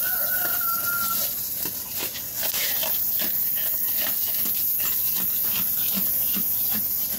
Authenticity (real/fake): real